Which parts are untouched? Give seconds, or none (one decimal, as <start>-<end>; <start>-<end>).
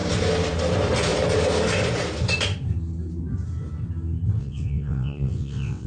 0.0-4.4